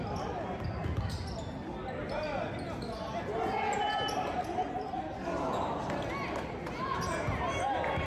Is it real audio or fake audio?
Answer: real